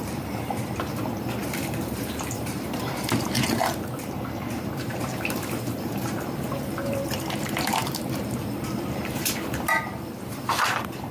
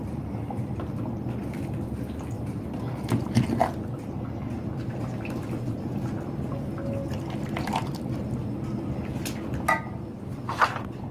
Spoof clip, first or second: first